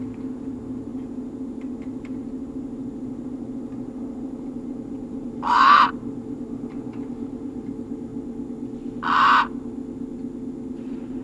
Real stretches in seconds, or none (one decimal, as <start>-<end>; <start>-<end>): 8.1-10.7